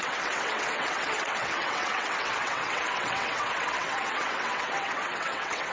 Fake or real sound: fake